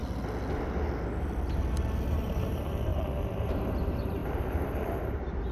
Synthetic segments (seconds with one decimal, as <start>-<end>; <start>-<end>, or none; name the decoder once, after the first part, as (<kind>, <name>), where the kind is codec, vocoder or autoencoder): 2.2-5.5 (vocoder, BigVGAN v2)